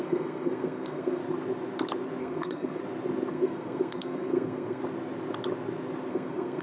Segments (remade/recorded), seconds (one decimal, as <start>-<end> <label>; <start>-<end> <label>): 0.0-1.2 remade; 1.2-2.2 recorded; 2.2-2.8 remade; 2.8-3.3 recorded; 3.3-4.8 remade; 4.8-6.1 recorded; 6.1-6.6 remade